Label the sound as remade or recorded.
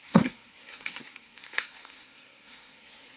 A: remade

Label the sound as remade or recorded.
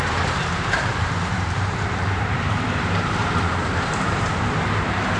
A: remade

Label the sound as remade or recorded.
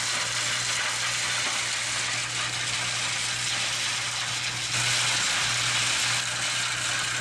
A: recorded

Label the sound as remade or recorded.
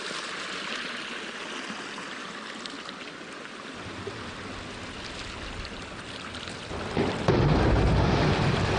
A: recorded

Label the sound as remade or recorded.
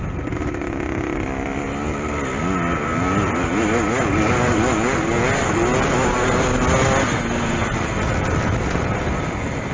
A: recorded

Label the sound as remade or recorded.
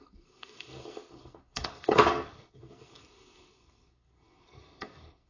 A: remade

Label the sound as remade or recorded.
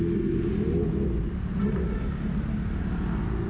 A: recorded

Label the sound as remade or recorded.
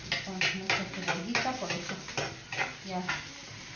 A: recorded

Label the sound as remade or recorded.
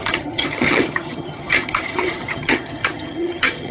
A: remade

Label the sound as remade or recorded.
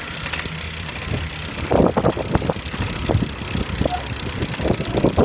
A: remade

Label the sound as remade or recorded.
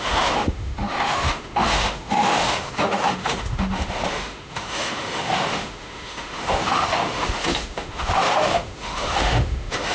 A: remade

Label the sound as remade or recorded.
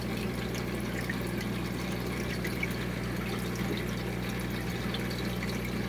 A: recorded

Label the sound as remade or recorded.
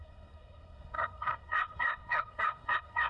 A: remade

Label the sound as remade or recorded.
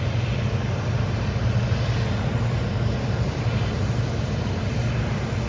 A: recorded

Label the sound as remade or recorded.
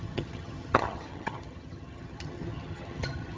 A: remade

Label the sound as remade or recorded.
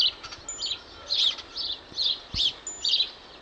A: recorded